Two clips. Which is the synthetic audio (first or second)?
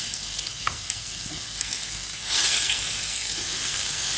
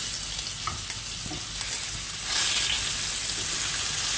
first